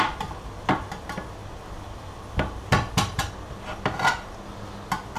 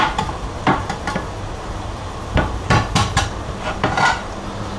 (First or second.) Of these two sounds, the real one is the first